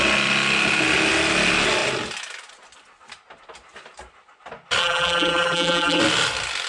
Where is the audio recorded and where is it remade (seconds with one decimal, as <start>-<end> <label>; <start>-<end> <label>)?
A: 0.0-4.8 recorded; 4.8-6.0 remade; 6.0-6.7 recorded